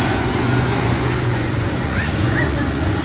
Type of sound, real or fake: fake